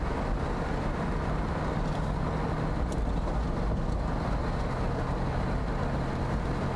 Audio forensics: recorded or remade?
recorded